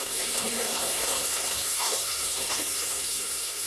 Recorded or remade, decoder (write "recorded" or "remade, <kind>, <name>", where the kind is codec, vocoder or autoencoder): remade, codec, SNAC